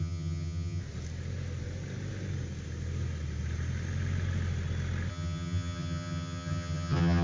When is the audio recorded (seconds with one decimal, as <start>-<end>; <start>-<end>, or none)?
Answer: 0.8-5.1